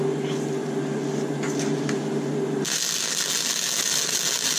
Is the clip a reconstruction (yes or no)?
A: no